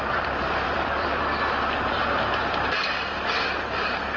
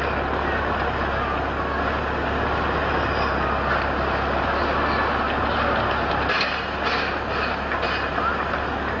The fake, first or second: first